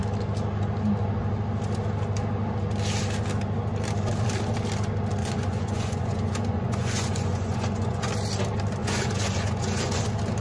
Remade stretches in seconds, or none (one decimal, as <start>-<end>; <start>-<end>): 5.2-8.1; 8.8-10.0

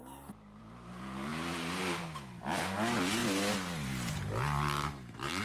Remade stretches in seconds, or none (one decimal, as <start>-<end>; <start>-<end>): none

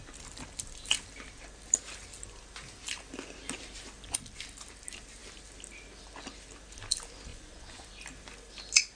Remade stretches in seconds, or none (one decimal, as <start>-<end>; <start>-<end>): 7.3-7.9